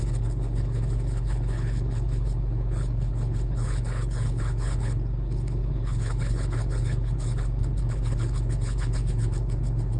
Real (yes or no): no